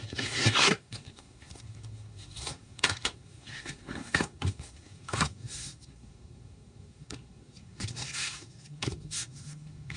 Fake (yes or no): yes